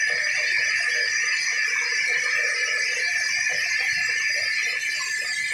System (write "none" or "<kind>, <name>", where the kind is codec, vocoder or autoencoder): none